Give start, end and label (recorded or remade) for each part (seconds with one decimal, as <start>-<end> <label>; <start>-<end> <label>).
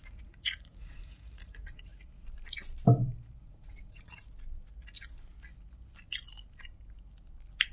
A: 0.0-1.9 remade; 1.9-3.4 recorded; 3.4-4.2 remade; 4.2-7.7 recorded